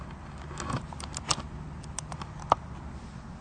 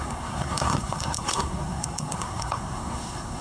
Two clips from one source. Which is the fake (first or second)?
second